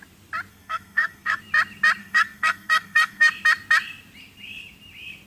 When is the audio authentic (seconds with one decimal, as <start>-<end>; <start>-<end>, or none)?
0.0-0.5; 1.4-2.0; 3.3-5.3

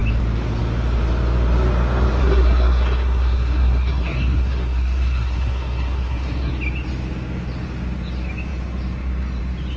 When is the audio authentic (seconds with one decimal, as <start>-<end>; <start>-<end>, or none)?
0.0-2.2; 6.5-9.8

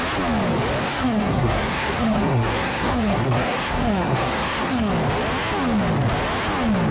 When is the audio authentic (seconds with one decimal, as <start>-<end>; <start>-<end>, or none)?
0.0-0.8; 4.9-6.9

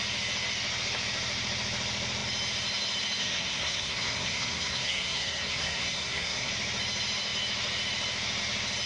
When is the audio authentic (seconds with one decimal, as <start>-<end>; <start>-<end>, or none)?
0.0-3.2; 6.5-8.9

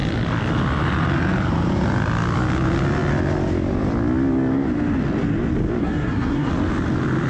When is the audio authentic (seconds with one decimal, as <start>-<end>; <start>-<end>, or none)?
0.0-5.8; 6.5-7.3

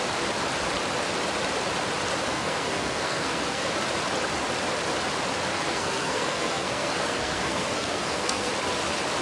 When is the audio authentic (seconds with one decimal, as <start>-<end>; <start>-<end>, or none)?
0.0-2.2; 3.7-5.5; 8.5-9.2

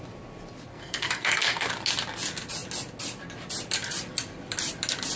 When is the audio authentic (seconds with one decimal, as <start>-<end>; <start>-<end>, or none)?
0.0-0.7; 1.7-5.2